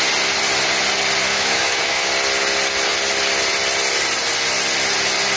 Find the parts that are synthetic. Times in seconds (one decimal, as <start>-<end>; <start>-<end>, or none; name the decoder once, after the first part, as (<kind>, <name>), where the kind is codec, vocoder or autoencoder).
1.3-2.1 (autoencoder, DAC-VAE)